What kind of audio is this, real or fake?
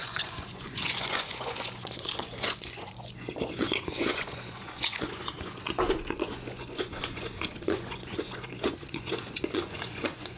fake